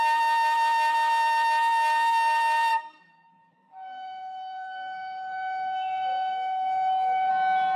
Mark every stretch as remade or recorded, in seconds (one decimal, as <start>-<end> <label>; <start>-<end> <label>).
0.0-2.7 recorded; 2.7-7.3 remade; 7.3-7.8 recorded